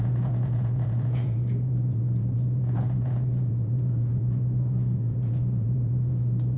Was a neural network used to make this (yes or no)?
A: yes